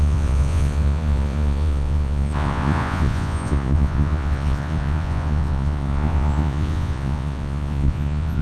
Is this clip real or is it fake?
fake